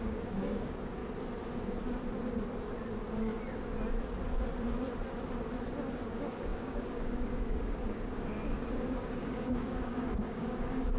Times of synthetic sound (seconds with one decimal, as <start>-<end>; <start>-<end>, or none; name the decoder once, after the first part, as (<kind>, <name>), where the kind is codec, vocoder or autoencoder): 0.0-1.0 (codec, DAC); 5.9-11.0